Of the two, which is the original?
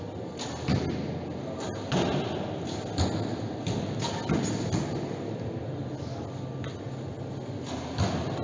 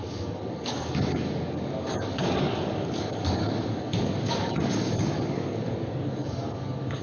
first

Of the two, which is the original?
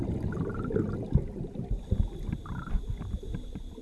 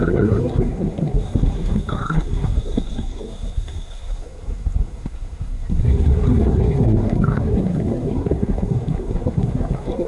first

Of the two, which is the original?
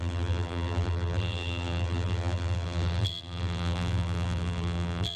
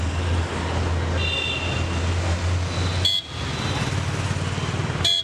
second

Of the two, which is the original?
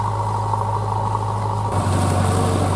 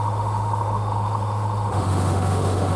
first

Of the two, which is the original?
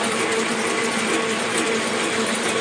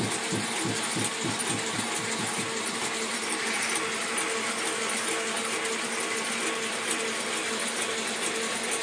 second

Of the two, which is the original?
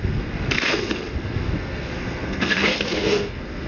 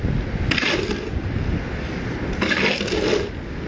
second